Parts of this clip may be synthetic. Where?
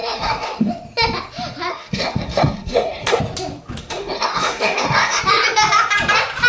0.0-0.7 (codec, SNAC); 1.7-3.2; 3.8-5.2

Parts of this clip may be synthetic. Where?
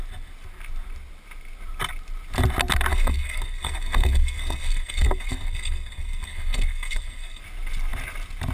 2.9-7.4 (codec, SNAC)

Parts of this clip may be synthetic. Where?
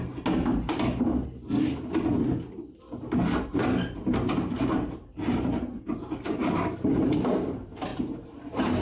3.6-7.5 (vocoder, BigVGAN v2); 7.9-8.8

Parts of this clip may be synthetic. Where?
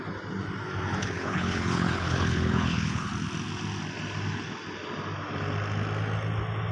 1.0-3.1 (codec, HILCodec)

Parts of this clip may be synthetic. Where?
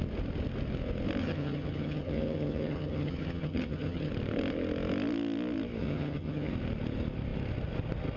1.2-4.1 (vocoder, HiFi-GAN); 5.8-6.5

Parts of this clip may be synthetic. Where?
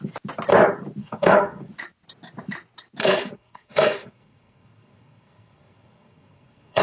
1.0-1.7 (codec, SNAC); 3.0-6.8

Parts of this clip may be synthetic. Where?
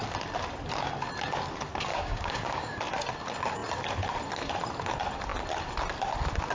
1.9-2.8 (codec, DAC)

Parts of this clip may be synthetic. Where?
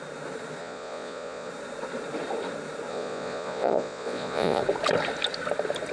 0.6-1.5 (vocoder, Vocos); 2.9-4.6